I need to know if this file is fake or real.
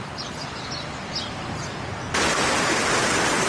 real